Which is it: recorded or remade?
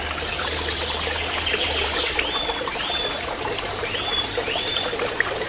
recorded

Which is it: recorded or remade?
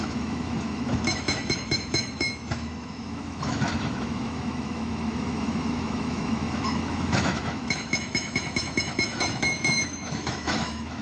remade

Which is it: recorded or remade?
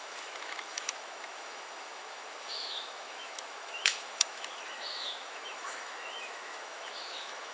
remade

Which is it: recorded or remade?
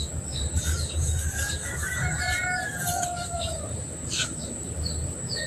remade